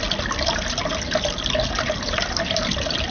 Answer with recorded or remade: recorded